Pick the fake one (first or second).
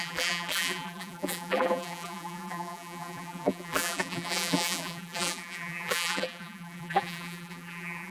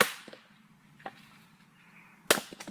first